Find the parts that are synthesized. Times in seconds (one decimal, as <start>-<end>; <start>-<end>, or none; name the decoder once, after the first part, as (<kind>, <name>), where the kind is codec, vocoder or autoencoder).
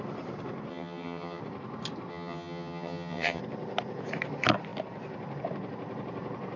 0.7-1.4 (vocoder, HiFi-GAN); 2.1-3.4